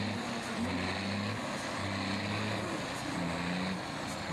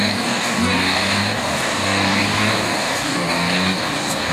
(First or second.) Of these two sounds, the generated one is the second